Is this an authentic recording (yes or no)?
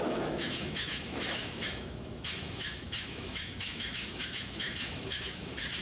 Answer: no